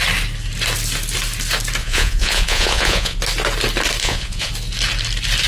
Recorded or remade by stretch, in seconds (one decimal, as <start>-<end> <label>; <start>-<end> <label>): 0.0-1.8 recorded; 1.8-3.2 remade; 3.2-4.0 recorded; 4.0-4.5 remade; 4.5-5.5 recorded